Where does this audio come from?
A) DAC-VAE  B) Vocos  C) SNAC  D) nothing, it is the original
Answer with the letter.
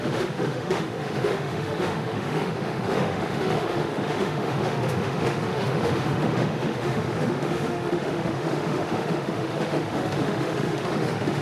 A